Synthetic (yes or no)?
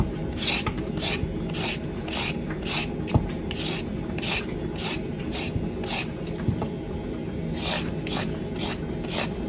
no